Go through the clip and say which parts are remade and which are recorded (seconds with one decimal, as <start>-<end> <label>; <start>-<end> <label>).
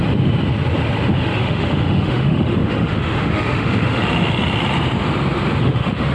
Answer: 0.0-1.1 recorded; 1.1-4.0 remade; 4.0-5.6 recorded; 5.6-6.1 remade